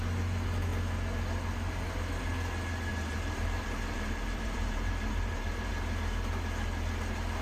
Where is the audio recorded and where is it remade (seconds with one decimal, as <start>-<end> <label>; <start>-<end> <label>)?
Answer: 0.0-2.9 recorded; 2.9-5.7 remade; 5.7-7.4 recorded